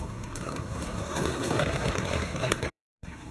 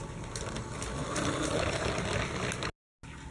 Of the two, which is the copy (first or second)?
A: first